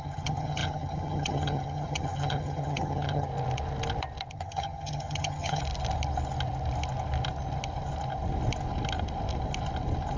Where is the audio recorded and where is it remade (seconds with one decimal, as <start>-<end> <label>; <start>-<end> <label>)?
0.0-3.3 remade; 3.3-4.3 recorded; 4.3-5.6 remade; 5.6-10.2 recorded